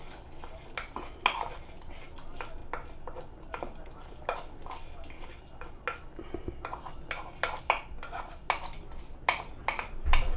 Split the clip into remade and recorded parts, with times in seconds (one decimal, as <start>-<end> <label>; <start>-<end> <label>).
0.0-10.4 recorded